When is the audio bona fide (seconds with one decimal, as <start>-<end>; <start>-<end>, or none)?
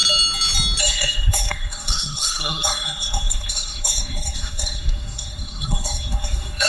0.0-0.8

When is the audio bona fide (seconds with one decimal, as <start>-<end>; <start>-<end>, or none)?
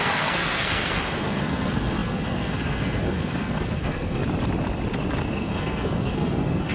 4.2-5.2